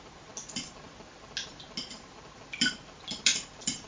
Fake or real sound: real